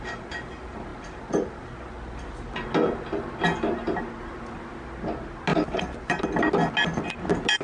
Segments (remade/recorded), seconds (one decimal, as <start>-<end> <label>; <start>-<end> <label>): 0.0-5.5 recorded; 5.5-6.2 remade; 6.2-7.6 recorded